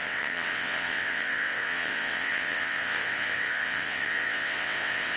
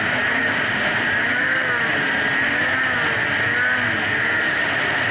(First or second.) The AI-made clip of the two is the first